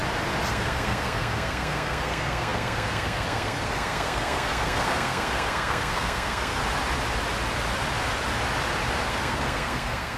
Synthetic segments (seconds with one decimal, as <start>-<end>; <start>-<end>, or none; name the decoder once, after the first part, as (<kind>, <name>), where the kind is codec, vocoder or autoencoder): 0.5-6.6 (codec, SNAC); 9.1-10.2